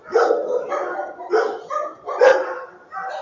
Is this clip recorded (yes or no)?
yes